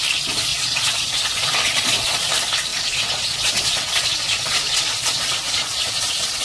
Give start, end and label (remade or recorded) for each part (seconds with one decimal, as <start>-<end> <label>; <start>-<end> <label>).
0.0-0.5 recorded; 0.5-2.3 remade; 2.3-2.7 recorded; 2.7-6.4 remade